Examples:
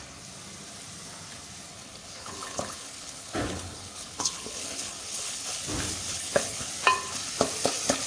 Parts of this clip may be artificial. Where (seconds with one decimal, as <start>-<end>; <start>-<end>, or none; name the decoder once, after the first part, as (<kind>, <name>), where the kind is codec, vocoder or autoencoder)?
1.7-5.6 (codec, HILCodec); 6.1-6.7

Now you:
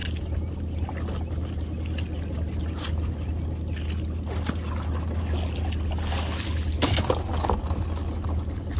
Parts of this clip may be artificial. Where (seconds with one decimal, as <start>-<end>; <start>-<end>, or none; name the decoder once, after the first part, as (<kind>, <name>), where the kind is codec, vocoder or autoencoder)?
none

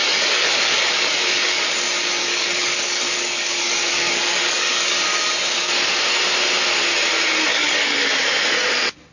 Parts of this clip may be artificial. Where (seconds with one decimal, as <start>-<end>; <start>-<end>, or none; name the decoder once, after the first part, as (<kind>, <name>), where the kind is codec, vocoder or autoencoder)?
0.0-1.6 (codec, DAC); 2.2-5.3; 7.5-8.1

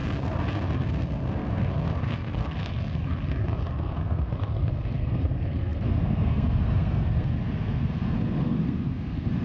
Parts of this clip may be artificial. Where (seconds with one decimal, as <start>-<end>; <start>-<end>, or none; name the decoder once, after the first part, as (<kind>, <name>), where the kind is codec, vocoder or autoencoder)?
0.0-3.0 (codec, SNAC); 3.7-9.4

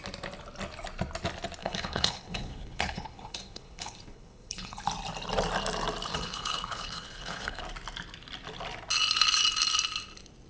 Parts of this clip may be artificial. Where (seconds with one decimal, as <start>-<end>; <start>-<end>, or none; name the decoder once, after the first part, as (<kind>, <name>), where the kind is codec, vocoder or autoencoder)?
1.6-4.8 (codec, HILCodec); 6.1-7.6